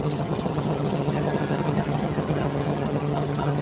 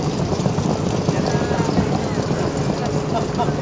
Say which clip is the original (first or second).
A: second